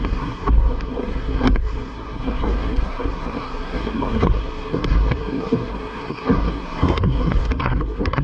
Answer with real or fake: fake